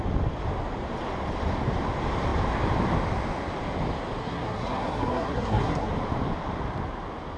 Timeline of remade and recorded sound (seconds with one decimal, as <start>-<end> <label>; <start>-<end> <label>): 0.0-4.2 recorded; 4.2-5.9 remade; 5.9-7.4 recorded